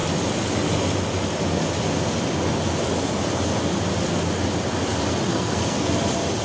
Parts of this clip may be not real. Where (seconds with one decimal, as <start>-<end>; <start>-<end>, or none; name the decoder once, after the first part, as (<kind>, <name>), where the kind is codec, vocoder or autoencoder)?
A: 5.3-5.9 (codec, SNAC)

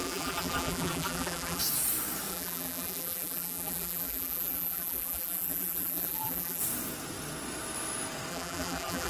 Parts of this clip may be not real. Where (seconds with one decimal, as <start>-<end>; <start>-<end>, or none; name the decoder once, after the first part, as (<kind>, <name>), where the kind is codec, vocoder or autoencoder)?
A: 0.0-1.6 (vocoder, BigVGAN v2); 2.3-6.6; 8.3-9.1